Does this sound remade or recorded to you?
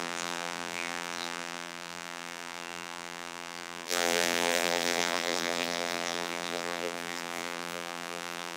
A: remade